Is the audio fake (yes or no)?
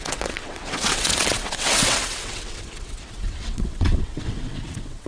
yes